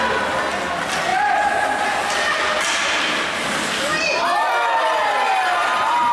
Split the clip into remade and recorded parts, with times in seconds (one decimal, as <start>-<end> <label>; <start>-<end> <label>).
0.0-6.1 recorded